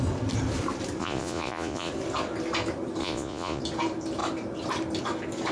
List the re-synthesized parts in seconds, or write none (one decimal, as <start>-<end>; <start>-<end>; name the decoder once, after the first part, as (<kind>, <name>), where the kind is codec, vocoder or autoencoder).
1.0-1.9 (vocoder, Vocos); 3.0-3.6